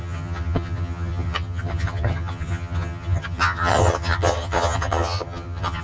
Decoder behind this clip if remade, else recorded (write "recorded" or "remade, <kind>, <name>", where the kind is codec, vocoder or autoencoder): remade, vocoder, HiFi-GAN